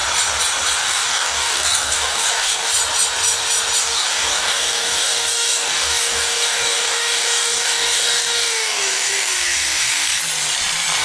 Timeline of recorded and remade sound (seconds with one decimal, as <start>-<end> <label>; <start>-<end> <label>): 0.0-0.8 recorded; 0.8-2.7 remade; 2.7-3.8 recorded; 3.8-10.2 remade; 10.2-11.0 recorded